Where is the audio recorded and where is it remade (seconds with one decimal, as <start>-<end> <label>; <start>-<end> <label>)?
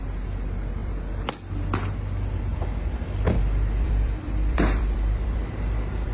0.0-0.8 recorded; 0.8-1.3 remade; 1.3-2.5 recorded; 2.5-6.1 remade